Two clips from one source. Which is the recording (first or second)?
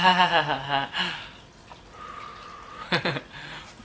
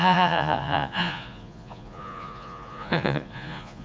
first